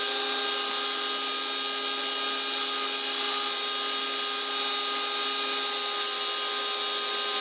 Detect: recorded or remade recorded